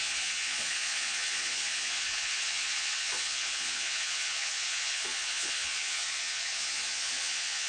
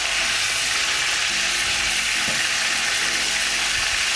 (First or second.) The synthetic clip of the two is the first